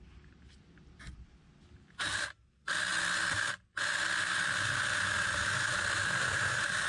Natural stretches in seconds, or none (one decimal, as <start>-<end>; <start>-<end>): 0.0-6.9

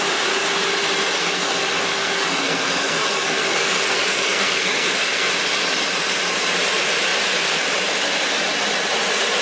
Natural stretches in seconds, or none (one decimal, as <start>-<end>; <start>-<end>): 0.0-1.2; 5.3-9.4

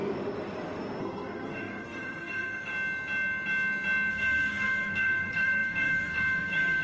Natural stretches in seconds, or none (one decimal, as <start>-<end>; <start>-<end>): 0.0-1.0; 2.7-4.1

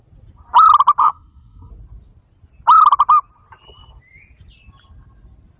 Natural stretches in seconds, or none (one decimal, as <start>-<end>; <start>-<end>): 0.0-1.0; 1.7-5.6

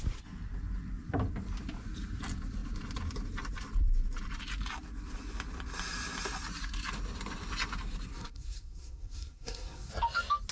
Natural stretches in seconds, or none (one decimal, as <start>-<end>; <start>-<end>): 0.0-8.1; 9.9-10.5

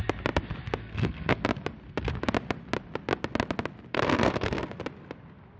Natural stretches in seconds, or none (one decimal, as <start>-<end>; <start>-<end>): 0.0-0.8; 1.4-3.9; 4.8-5.6

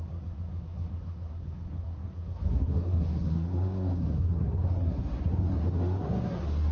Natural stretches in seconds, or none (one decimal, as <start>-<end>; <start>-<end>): none

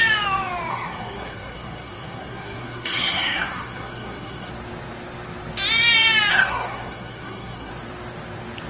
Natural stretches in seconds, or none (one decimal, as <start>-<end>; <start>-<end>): 0.0-0.7; 4.5-6.3; 7.7-8.7